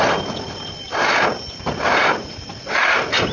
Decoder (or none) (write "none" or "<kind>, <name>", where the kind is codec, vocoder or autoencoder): none